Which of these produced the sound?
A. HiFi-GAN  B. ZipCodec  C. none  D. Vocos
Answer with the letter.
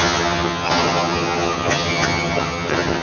A